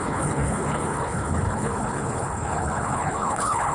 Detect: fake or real fake